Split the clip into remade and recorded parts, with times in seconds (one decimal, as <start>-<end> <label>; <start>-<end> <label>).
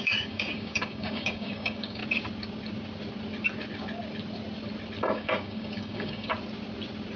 0.0-2.0 remade; 2.0-5.0 recorded; 5.0-6.3 remade; 6.3-7.2 recorded